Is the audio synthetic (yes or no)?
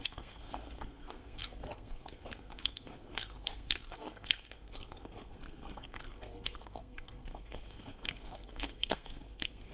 yes